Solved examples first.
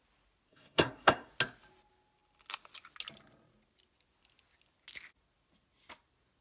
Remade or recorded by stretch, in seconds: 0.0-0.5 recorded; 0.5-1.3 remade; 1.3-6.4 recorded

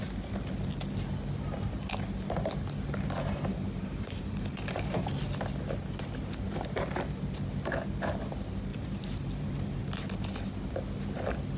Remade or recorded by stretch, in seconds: 0.0-3.5 recorded; 3.5-5.1 remade; 5.1-8.7 recorded; 8.7-9.8 remade; 9.8-11.6 recorded

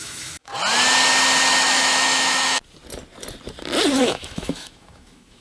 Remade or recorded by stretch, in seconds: 0.0-0.5 remade; 0.5-1.6 recorded; 1.6-2.6 remade; 2.6-4.0 recorded; 4.0-5.4 remade